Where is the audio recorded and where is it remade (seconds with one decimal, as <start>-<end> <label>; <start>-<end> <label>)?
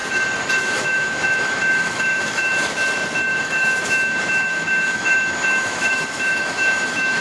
0.0-0.6 recorded; 0.6-2.5 remade; 2.5-3.4 recorded; 3.4-7.2 remade